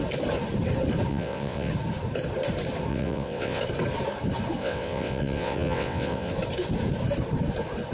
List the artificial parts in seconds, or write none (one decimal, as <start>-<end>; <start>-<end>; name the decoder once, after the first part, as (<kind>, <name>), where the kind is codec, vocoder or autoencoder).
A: 1.1-1.7 (vocoder, WaveNeXt); 2.9-3.6; 4.6-6.3